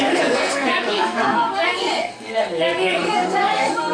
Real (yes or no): no